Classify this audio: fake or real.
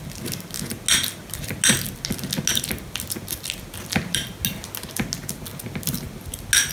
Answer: real